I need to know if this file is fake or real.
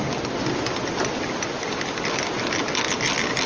real